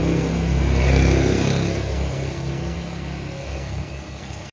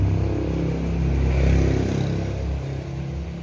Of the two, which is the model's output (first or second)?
first